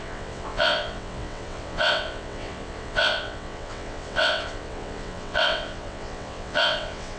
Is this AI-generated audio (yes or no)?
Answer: yes